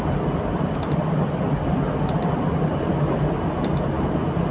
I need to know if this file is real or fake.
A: real